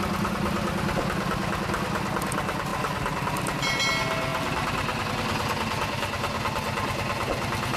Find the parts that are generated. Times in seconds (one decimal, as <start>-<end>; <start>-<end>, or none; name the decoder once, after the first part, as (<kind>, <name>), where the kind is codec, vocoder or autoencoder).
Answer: none

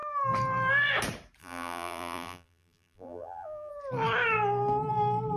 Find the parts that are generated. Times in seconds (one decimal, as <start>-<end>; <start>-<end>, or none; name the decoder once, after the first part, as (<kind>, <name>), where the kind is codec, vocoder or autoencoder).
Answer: 1.4-3.7 (vocoder, BigVGAN v2)